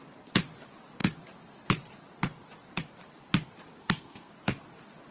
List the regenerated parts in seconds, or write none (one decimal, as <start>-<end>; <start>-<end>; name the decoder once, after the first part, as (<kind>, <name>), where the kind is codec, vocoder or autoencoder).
3.8-4.3 (codec, SNAC)